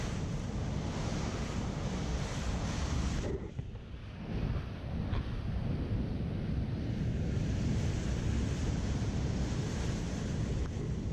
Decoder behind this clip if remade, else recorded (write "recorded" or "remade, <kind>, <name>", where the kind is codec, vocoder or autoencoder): recorded